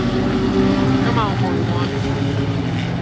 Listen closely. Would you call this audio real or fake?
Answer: real